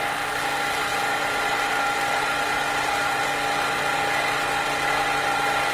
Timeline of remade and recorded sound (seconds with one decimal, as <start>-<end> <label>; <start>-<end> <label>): 0.0-0.9 recorded; 0.9-3.2 remade; 3.2-5.7 recorded